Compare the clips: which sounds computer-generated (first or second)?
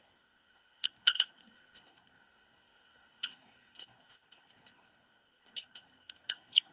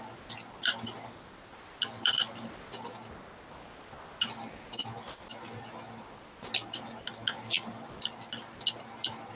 first